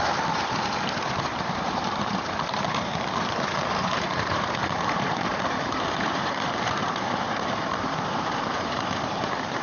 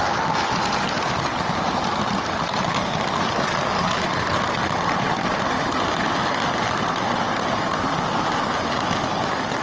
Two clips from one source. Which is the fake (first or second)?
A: first